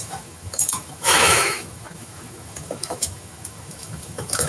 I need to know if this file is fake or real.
fake